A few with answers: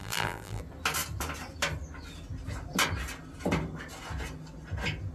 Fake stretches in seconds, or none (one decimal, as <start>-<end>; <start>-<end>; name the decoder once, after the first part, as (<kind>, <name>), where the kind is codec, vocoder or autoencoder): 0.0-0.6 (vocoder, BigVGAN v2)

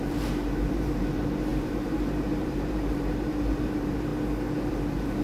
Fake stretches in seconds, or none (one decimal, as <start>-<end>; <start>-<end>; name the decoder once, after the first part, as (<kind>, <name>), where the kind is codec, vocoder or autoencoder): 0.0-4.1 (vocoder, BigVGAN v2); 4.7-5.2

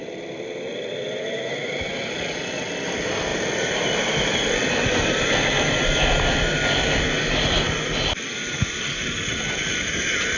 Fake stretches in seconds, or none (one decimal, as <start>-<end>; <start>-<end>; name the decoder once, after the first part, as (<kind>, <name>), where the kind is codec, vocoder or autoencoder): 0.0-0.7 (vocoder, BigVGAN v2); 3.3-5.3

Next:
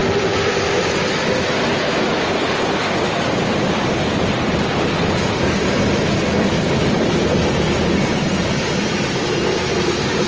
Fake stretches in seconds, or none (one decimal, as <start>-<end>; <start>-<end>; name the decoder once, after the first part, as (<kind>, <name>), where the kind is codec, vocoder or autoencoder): none

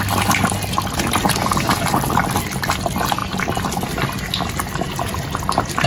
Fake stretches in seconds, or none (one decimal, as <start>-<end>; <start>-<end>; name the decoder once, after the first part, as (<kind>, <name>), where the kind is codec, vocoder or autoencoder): 1.4-2.8 (vocoder, BigVGAN v2); 3.2-5.4